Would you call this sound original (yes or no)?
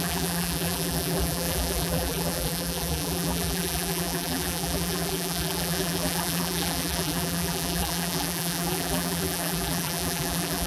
no